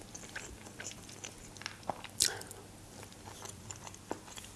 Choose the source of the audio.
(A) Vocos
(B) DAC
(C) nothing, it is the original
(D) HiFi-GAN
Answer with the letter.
C